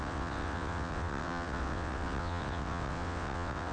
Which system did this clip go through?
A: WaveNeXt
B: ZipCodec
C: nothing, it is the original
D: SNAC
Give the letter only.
A